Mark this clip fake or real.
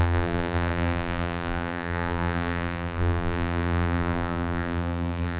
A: fake